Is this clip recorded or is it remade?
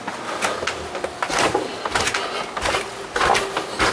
recorded